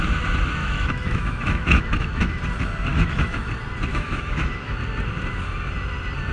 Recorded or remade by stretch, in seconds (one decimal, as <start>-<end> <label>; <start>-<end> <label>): 0.0-0.6 recorded; 0.6-2.4 remade; 2.4-2.9 recorded; 2.9-3.5 remade; 3.5-3.9 recorded; 3.9-4.8 remade; 4.8-6.3 recorded

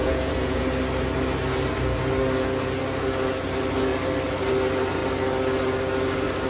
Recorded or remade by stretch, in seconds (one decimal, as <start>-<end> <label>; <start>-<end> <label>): 0.0-0.6 remade; 0.6-6.5 recorded

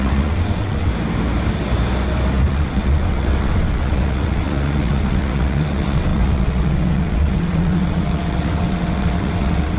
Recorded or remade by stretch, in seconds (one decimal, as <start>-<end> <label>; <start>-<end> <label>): 0.0-0.9 remade; 0.9-2.5 recorded; 2.5-9.8 remade

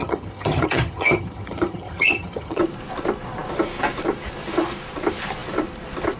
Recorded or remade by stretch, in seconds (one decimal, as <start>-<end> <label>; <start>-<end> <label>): 0.0-2.6 remade; 2.6-6.2 recorded

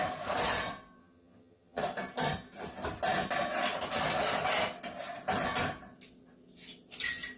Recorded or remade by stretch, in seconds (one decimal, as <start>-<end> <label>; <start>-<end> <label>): 0.0-1.0 recorded; 1.0-1.8 remade; 1.8-7.4 recorded